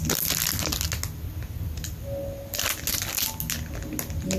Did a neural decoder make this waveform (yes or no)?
no